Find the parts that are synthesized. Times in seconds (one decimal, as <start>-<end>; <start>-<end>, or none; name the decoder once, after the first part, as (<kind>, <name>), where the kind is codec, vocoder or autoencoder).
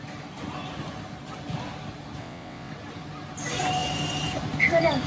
2.2-2.7 (vocoder, WaveNeXt)